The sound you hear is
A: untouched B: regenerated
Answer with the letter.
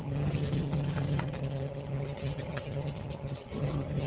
B